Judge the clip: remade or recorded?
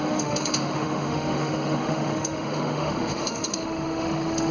remade